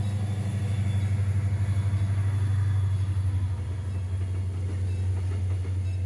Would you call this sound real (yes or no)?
yes